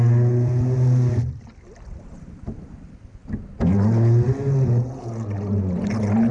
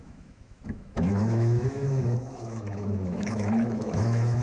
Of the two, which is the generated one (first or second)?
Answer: second